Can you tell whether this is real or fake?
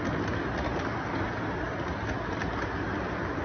real